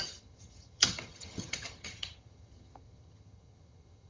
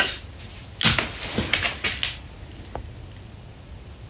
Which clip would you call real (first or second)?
second